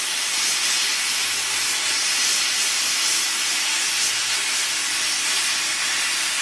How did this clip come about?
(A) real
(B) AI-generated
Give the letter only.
A